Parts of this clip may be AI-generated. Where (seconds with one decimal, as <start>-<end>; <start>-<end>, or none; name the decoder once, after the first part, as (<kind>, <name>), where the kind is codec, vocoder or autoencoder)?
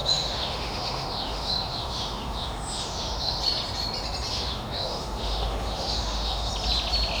0.0-3.4 (autoencoder, DAC-VAE); 4.3-6.5